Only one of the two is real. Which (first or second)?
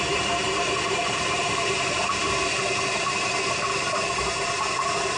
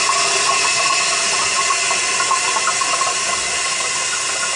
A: second